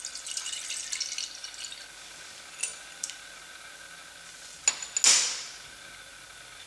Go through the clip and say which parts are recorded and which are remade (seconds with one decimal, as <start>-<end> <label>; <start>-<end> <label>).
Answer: 0.0-6.7 recorded